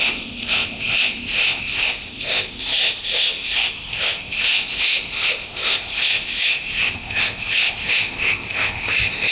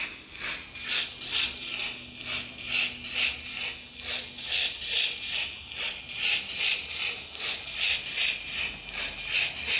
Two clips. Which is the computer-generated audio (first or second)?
first